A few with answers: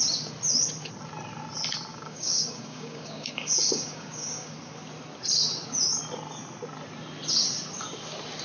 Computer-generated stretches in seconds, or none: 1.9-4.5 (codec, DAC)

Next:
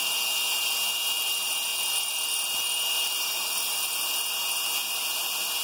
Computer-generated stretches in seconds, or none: none

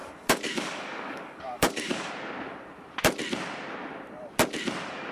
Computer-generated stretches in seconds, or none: 0.0-2.1 (codec, DAC)